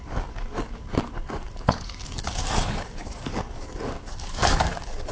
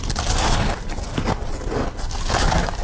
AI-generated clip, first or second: first